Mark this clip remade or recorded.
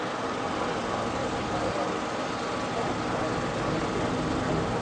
recorded